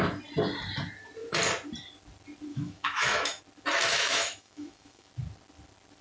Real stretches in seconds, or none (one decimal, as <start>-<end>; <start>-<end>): 0.0-2.5; 3.4-3.9; 5.1-6.0